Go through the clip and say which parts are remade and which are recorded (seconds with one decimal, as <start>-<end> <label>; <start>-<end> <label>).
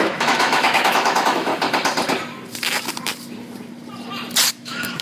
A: 0.0-1.5 remade; 1.5-4.5 recorded; 4.5-5.0 remade